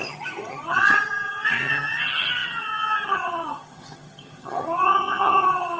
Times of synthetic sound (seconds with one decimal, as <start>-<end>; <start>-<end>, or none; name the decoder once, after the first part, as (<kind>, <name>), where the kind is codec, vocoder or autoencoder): 0.0-5.8 (vocoder, HiFi-GAN)